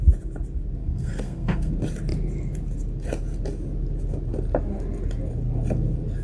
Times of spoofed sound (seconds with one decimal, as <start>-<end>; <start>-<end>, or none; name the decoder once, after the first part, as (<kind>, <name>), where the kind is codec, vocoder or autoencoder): 0.8-1.7 (codec, SNAC)

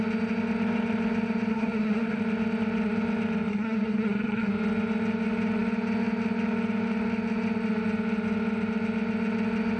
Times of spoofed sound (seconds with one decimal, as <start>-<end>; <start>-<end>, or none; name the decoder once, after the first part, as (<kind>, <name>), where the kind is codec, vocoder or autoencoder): 1.5-2.2 (codec, SNAC); 3.5-4.5